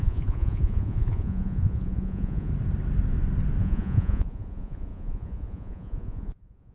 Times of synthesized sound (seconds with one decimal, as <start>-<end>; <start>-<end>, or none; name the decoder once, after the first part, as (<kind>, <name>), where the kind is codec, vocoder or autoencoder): 0.0-2.5 (vocoder, Vocos); 3.6-6.7